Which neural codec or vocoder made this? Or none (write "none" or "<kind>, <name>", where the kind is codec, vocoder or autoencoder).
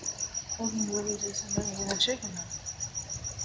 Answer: none